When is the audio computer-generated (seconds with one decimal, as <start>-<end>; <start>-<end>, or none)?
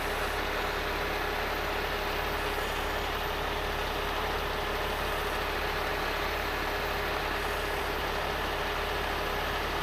none